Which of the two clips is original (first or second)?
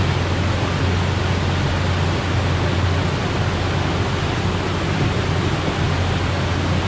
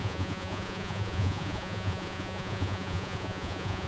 first